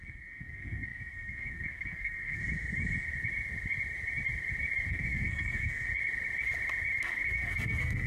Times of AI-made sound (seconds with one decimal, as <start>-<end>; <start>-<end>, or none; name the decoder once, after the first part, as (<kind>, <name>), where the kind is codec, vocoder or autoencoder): 0.0-2.4 (codec, SNAC); 4.9-5.9; 7.0-8.1